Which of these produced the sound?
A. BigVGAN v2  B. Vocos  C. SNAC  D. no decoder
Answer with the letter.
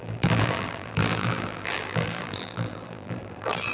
A